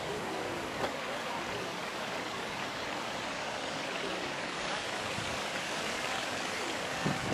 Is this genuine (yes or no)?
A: no